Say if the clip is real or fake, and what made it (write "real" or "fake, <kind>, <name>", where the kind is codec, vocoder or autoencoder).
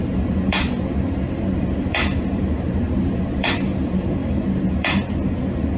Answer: fake, vocoder, BigVGAN v2